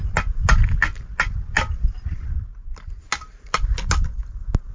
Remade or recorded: recorded